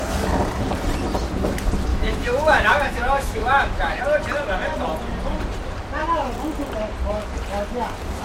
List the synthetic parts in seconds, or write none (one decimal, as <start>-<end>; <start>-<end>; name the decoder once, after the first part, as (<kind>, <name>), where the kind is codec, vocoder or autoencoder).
1.9-4.0 (autoencoder, DAC-VAE)